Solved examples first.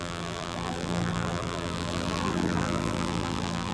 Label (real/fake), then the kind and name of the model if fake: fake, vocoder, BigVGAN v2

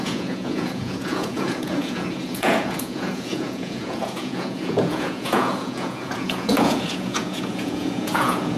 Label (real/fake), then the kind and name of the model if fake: fake, vocoder, Vocos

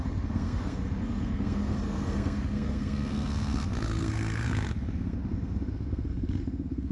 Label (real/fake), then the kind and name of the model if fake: fake, codec, SNAC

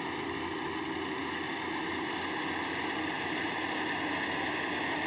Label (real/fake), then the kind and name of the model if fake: real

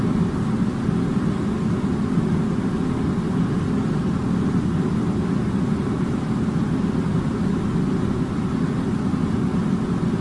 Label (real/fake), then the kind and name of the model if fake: real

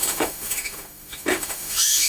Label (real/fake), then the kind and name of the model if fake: fake, autoencoder, DAC-VAE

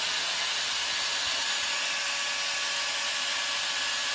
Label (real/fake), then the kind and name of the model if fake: real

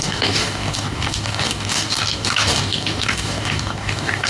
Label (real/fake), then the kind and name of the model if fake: fake, codec, DAC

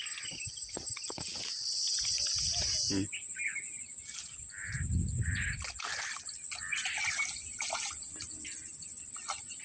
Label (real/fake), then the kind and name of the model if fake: real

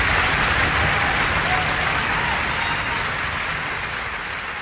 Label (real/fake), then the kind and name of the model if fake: real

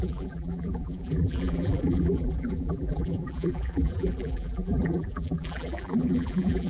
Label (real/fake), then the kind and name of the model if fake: fake, vocoder, BigVGAN v2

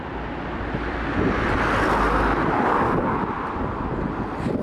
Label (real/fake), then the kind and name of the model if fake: real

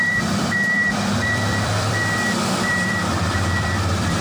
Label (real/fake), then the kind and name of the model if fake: fake, vocoder, BigVGAN v2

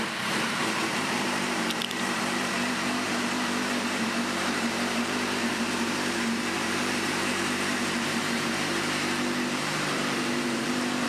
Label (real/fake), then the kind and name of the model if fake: fake, vocoder, BigVGAN v2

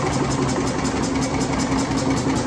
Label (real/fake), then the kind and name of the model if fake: real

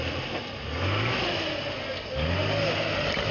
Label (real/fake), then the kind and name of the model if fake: real